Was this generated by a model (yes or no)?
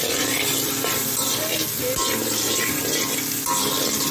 no